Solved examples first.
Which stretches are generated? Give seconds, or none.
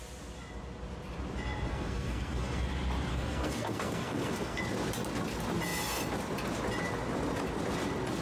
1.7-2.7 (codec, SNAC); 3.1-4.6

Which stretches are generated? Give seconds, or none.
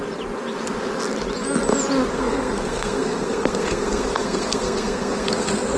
2.1-5.8 (codec, SNAC)